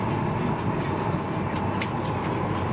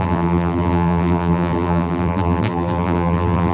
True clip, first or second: first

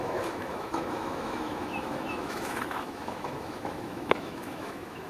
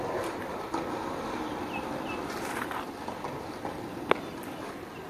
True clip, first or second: second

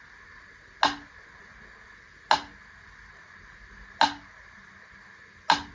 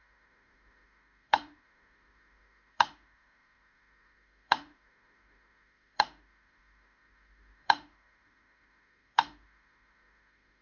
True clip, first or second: first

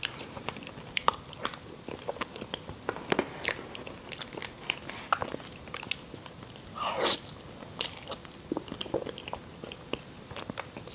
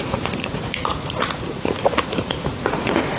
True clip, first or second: first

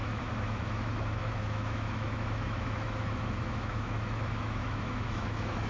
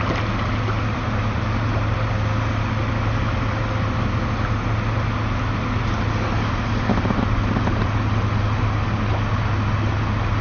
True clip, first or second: second